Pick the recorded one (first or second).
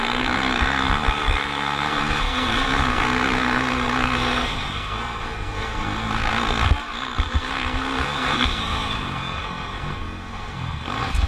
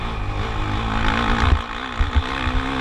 second